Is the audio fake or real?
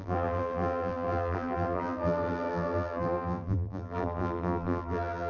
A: fake